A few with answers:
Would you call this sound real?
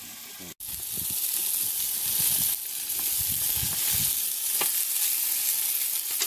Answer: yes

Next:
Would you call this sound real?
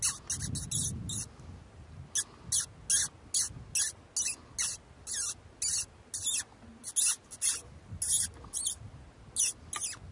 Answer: yes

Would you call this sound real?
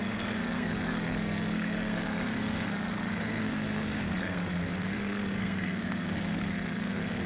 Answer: no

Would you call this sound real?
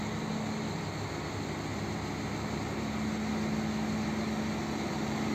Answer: yes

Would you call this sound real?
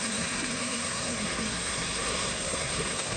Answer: no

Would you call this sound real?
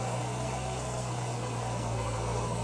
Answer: no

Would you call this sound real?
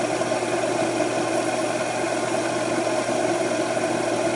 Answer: yes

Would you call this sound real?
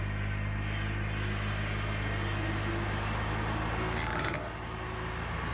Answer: yes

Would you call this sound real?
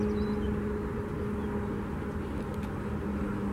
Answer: yes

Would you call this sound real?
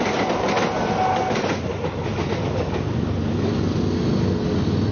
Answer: yes